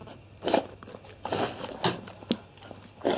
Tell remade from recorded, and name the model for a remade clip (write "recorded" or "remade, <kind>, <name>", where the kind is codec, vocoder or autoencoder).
recorded